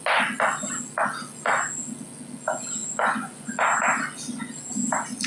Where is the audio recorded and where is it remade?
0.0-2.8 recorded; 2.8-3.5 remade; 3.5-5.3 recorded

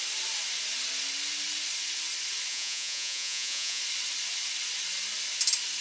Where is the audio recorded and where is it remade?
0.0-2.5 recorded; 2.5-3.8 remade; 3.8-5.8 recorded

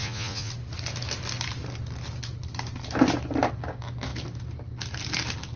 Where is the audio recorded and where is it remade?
0.0-0.5 remade; 0.5-5.6 recorded

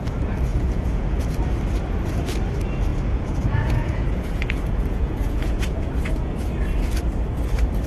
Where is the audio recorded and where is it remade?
0.0-0.5 recorded; 0.5-1.3 remade; 1.3-2.9 recorded; 2.9-5.9 remade; 5.9-7.9 recorded

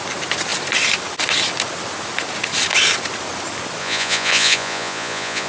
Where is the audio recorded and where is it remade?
0.0-3.8 recorded; 3.8-5.5 remade

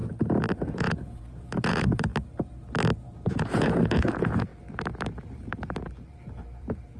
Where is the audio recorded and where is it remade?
0.0-0.7 recorded; 0.7-2.1 remade; 2.1-3.3 recorded; 3.3-4.5 remade; 4.5-7.0 recorded

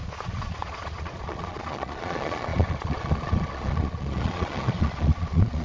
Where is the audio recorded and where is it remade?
0.0-5.6 remade

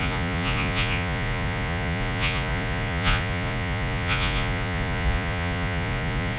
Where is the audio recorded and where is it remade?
0.0-6.4 remade